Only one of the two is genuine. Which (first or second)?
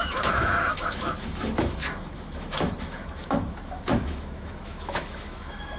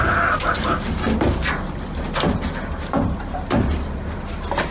second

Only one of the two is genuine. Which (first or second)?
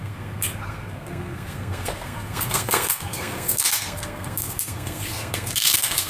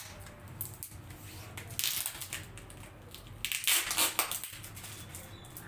second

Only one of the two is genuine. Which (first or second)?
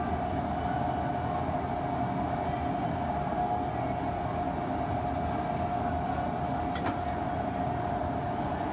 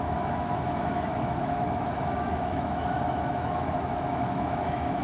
first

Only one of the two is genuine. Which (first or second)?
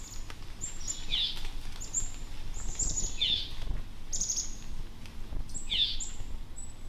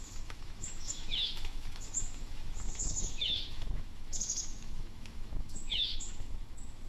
first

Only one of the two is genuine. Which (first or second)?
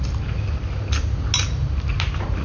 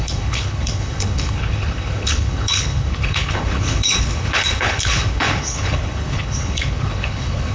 first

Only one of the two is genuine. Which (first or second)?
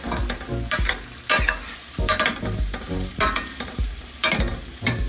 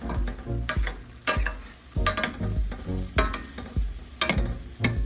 second